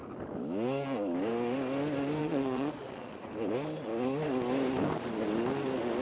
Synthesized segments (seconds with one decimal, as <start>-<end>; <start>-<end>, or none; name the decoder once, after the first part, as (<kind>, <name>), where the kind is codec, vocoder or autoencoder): 2.2-3.3 (vocoder, Vocos)